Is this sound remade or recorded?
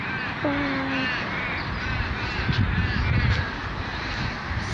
recorded